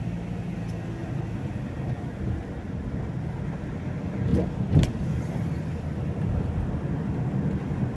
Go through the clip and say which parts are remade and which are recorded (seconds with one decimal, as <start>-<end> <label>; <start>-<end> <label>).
0.0-8.0 recorded